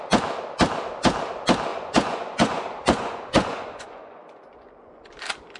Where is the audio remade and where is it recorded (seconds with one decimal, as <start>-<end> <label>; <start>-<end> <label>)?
0.0-1.7 recorded; 1.7-5.1 remade; 5.1-5.6 recorded